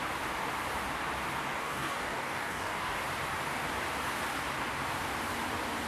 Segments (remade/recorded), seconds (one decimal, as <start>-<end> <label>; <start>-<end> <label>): 0.0-1.6 recorded; 1.6-3.0 remade; 3.0-5.9 recorded